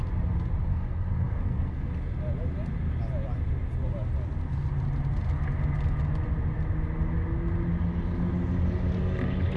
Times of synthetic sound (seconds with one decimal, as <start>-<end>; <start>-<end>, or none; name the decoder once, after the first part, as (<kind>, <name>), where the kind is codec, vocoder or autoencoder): 0.7-1.9 (codec, SNAC)